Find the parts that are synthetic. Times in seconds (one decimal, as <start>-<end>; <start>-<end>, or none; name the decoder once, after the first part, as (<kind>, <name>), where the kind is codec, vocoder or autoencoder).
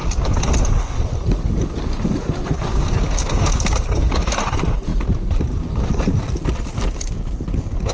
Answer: 2.7-4.3 (codec, DAC)